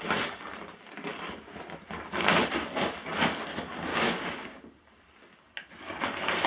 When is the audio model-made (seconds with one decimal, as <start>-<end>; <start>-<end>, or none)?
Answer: 3.9-4.6